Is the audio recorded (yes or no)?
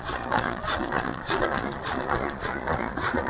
no